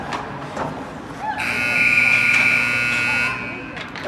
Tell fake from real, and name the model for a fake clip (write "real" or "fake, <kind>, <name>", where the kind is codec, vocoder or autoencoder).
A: real